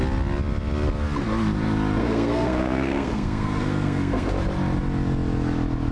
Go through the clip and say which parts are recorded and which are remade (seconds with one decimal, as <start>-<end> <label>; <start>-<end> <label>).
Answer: 0.0-2.0 recorded; 2.0-4.3 remade; 4.3-5.9 recorded